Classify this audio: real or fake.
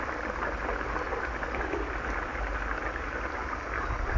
real